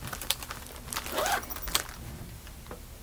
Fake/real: real